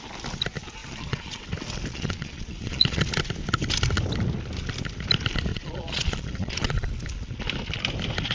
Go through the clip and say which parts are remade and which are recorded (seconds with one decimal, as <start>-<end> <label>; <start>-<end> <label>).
0.0-0.8 recorded; 0.8-1.4 remade; 1.4-1.9 recorded; 1.9-3.0 remade; 3.0-5.5 recorded; 5.5-6.9 remade; 6.9-8.3 recorded